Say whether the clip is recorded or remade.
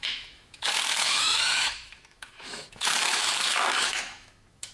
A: remade